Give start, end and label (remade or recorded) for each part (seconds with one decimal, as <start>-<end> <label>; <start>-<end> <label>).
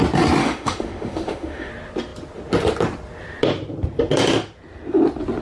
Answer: 0.0-0.4 recorded; 0.4-1.7 remade; 1.7-5.4 recorded